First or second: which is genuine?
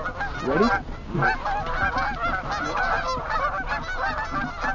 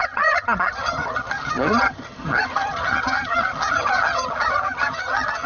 first